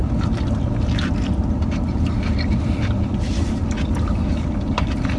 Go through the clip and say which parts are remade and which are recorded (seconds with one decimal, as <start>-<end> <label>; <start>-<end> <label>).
0.0-5.2 recorded